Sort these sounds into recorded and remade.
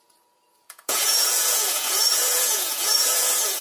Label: remade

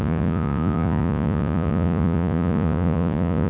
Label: remade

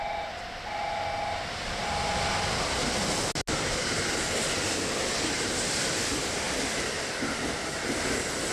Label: recorded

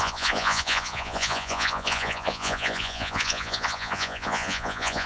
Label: remade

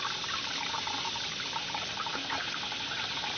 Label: recorded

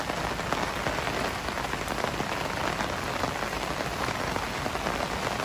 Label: recorded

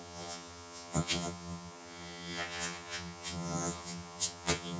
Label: remade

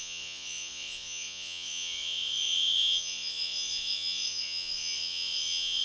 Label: remade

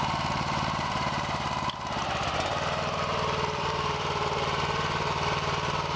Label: remade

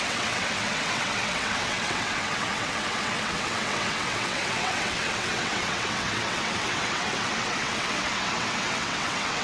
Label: remade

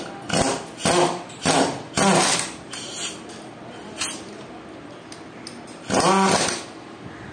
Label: recorded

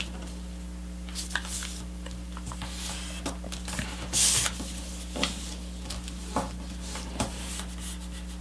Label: recorded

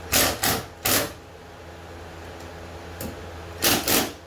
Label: recorded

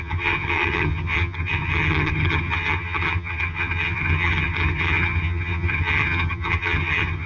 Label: remade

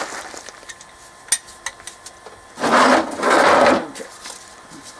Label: recorded